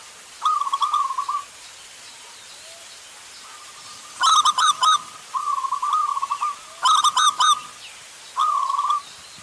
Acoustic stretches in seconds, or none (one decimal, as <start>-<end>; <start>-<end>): 0.0-3.9; 5.0-9.4